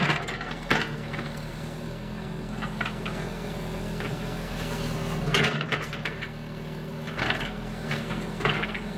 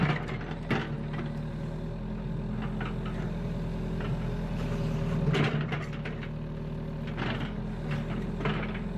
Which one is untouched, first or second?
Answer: second